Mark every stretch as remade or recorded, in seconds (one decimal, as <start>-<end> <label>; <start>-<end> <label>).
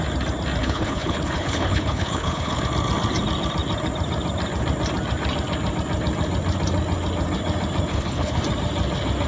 0.0-0.6 recorded; 0.6-2.6 remade; 2.6-7.9 recorded; 7.9-8.4 remade; 8.4-9.3 recorded